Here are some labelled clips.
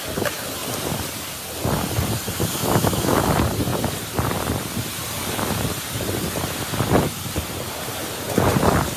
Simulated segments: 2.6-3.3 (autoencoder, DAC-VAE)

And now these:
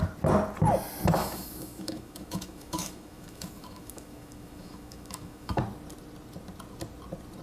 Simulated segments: 1.2-5.6 (autoencoder, DAC-VAE)

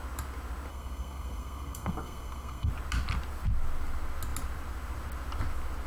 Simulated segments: 0.7-2.7 (codec, SNAC)

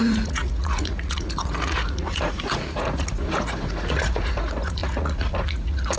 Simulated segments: 0.0-6.0 (vocoder, Vocos)